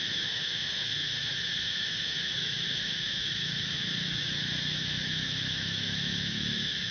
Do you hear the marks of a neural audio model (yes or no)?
yes